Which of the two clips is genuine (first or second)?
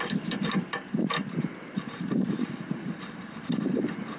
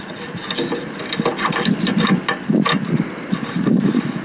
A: second